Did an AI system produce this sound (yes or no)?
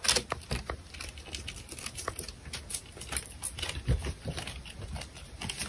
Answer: no